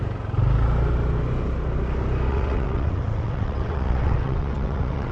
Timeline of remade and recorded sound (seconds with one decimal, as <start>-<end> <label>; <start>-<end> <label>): 0.0-2.3 recorded; 2.3-5.1 remade